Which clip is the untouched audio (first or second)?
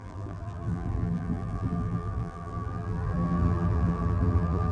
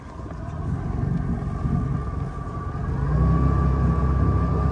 second